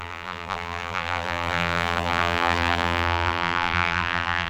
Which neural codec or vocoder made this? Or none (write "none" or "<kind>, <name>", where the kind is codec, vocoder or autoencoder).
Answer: vocoder, BigVGAN v2